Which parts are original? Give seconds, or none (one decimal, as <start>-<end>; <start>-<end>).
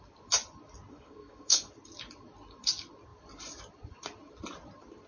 0.0-0.9; 1.7-5.1